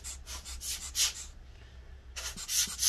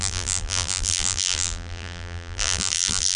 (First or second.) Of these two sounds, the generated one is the second